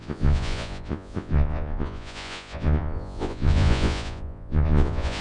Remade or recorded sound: remade